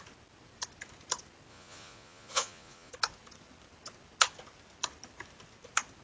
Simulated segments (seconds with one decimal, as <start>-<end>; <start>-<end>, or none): 1.5-2.9